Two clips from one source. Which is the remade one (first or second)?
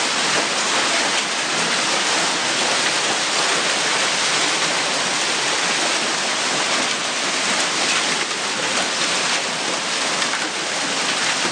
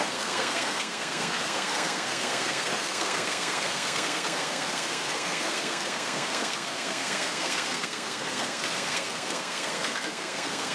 second